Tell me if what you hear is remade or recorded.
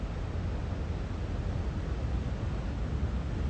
recorded